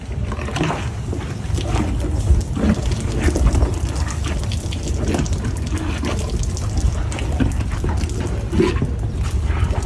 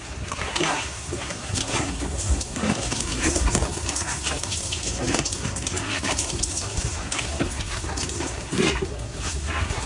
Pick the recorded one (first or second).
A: first